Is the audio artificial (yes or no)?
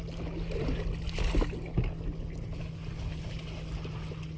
no